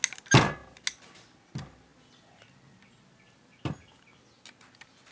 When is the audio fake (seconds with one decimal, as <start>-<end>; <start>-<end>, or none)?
none